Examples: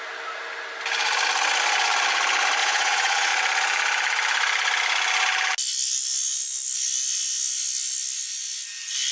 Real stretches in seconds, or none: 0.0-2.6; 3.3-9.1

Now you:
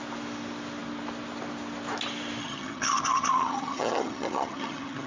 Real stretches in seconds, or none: 0.0-2.4